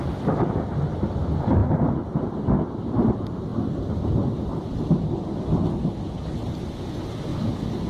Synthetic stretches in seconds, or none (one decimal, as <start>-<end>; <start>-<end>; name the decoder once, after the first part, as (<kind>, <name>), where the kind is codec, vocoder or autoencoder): none